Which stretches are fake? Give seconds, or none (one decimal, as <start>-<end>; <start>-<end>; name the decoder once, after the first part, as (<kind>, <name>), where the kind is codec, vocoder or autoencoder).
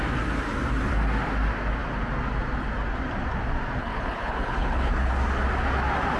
3.8-5.1 (codec, HILCodec)